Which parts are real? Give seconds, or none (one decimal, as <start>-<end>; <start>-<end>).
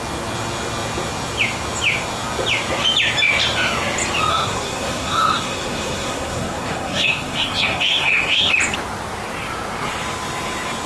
0.0-4.3; 8.5-10.9